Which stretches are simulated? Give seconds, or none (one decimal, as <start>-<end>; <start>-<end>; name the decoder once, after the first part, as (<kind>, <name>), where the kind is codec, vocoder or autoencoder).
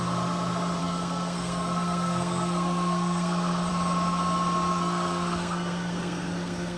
0.8-3.7 (codec, SNAC); 4.7-6.8